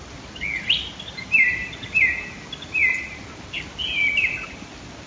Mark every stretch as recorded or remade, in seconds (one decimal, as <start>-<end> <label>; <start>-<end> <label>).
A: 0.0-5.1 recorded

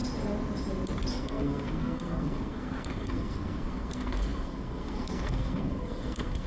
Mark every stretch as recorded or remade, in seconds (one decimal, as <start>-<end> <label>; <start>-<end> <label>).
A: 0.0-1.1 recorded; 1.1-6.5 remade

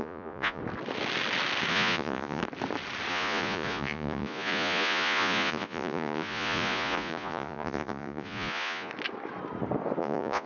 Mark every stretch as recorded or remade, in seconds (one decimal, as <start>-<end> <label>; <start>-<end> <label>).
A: 0.0-0.6 remade; 0.6-1.7 recorded; 1.7-2.4 remade; 2.4-3.1 recorded; 3.1-8.9 remade; 8.9-10.0 recorded; 10.0-10.5 remade